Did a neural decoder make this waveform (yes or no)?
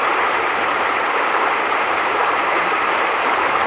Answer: yes